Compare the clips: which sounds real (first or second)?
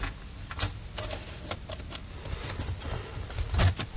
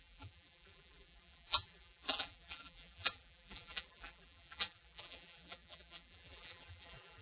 first